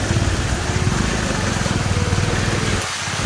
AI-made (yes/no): no